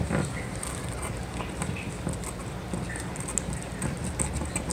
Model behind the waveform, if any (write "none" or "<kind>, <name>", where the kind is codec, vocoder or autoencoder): none